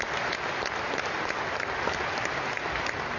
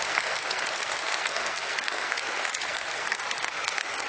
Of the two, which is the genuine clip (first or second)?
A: first